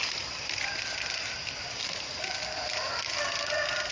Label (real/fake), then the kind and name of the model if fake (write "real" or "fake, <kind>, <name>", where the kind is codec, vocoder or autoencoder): real